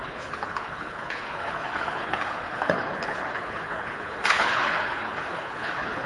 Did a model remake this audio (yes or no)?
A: yes